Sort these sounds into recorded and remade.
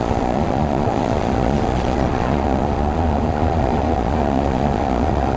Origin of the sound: remade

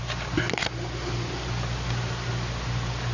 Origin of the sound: recorded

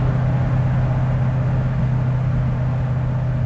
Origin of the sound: recorded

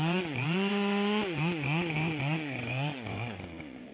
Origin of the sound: remade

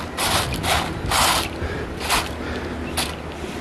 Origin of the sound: recorded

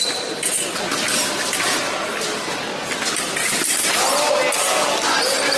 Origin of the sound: recorded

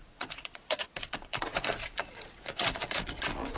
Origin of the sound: remade